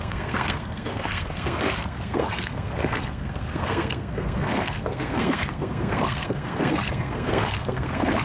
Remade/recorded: remade